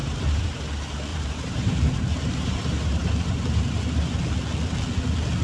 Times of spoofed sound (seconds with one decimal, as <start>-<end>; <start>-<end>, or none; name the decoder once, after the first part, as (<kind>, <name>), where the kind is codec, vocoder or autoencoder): 0.0-0.6 (vocoder, BigVGAN v2); 1.1-4.3